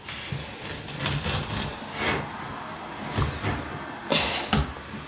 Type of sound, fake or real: real